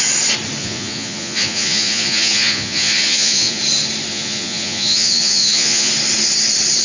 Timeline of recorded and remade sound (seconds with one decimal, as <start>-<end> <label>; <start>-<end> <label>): 0.0-0.6 recorded; 0.6-3.6 remade; 3.6-4.1 recorded; 4.1-5.9 remade; 5.9-6.8 recorded

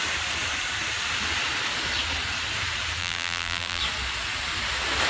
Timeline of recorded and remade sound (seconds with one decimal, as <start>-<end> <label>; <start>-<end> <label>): 0.0-3.0 recorded; 3.0-3.8 remade; 3.8-5.1 recorded

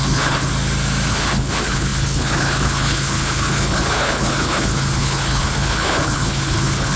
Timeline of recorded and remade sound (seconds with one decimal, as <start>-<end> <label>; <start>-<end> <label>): 0.0-0.5 remade; 0.5-1.1 recorded; 1.1-7.0 remade

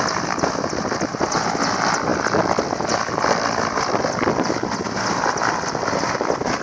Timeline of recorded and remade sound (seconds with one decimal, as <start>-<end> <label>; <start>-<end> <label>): 0.0-6.6 recorded

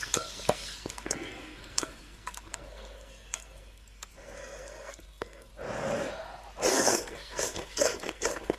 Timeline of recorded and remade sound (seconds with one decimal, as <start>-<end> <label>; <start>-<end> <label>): 0.0-5.5 remade; 5.5-6.7 recorded; 6.7-8.6 remade

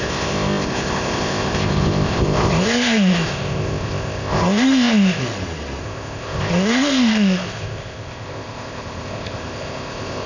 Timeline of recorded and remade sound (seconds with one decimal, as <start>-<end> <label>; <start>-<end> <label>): 0.0-5.2 remade; 5.2-5.8 recorded; 5.8-10.3 remade

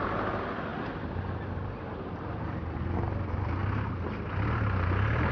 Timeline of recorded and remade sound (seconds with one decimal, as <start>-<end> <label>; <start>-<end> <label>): 0.0-5.3 recorded